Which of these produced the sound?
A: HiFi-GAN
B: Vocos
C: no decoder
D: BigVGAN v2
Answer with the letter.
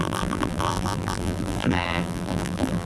D